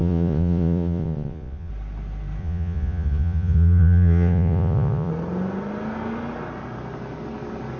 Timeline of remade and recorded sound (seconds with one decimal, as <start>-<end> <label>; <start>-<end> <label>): 0.0-1.7 remade; 1.7-2.4 recorded; 2.4-5.1 remade; 5.1-7.8 recorded

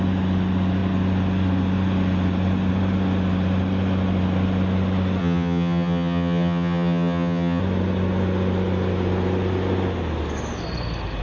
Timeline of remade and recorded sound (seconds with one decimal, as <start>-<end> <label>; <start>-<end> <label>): 0.0-5.2 recorded; 5.2-7.6 remade; 7.6-11.2 recorded

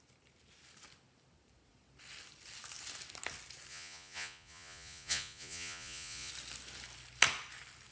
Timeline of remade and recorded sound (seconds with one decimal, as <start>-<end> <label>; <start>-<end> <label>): 0.0-3.7 recorded; 3.7-6.3 remade; 6.3-7.9 recorded